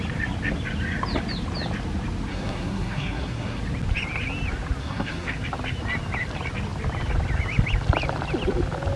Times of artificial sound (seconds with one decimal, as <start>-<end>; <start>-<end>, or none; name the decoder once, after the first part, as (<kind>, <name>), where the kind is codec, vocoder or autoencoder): 2.3-3.6 (codec, SNAC); 4.8-5.3